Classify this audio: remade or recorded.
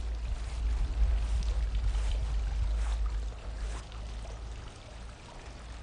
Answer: recorded